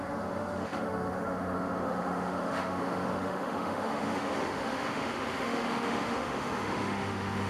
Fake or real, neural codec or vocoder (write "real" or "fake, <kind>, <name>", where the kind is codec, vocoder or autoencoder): fake, autoencoder, DAC-VAE